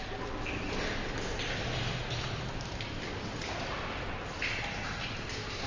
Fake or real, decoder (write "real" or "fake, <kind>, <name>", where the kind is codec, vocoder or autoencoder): real